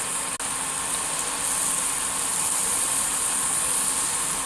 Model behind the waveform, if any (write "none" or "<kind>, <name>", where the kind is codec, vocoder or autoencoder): none